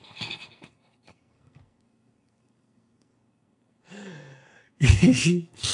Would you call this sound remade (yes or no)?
yes